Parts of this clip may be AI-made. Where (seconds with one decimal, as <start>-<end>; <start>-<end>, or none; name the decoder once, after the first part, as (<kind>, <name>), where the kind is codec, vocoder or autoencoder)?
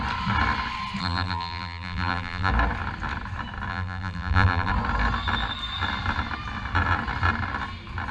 1.0-2.5 (vocoder, BigVGAN v2); 3.7-4.7